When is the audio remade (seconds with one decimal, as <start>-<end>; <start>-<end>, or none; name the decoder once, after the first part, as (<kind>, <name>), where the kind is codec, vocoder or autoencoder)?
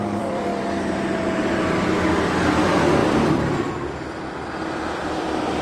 0.0-0.5 (vocoder, BigVGAN v2); 2.4-5.6